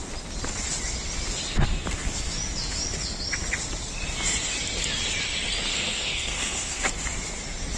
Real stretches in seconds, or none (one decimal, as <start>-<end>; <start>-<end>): 0.0-5.7; 6.8-7.8